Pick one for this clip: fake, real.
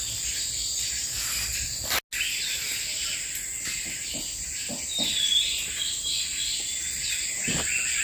real